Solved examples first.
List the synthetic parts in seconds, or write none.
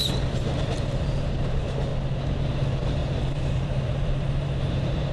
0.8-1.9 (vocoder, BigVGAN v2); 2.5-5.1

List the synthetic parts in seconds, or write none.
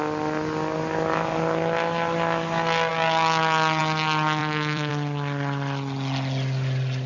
4.4-4.9 (vocoder, BigVGAN v2)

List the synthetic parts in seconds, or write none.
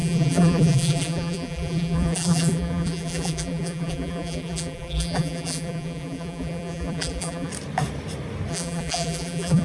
0.0-7.5 (vocoder, BigVGAN v2); 8.5-9.6